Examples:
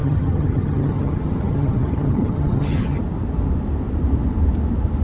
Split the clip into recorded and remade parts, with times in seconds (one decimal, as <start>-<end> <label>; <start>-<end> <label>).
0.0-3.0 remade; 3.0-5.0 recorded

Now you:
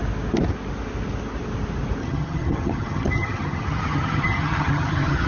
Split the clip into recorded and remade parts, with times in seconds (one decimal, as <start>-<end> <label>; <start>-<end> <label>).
0.0-2.0 recorded; 2.0-5.3 remade

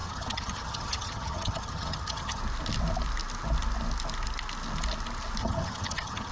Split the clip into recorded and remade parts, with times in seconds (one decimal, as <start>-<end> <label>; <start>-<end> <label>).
0.0-2.4 remade; 2.4-5.4 recorded; 5.4-6.3 remade

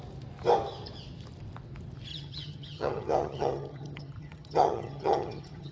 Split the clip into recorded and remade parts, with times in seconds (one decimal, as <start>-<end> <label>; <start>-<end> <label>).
0.0-2.1 recorded; 2.1-5.7 remade

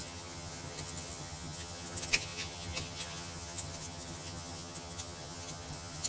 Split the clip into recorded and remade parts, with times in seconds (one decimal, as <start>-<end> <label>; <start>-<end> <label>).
0.0-6.1 remade

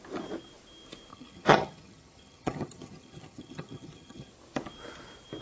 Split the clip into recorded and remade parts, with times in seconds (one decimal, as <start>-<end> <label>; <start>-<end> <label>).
0.0-1.1 recorded; 1.1-4.3 remade; 4.3-5.4 recorded

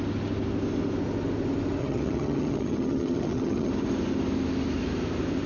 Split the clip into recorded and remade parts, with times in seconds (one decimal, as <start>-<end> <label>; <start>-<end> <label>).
0.0-1.8 recorded; 1.8-3.7 remade; 3.7-5.5 recorded